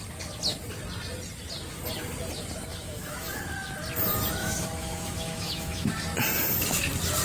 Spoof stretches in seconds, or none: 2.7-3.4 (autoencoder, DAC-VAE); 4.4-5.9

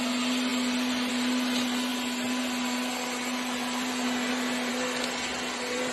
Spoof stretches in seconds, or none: none